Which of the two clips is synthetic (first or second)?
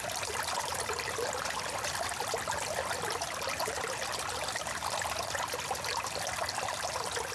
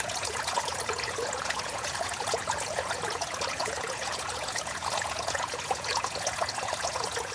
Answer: second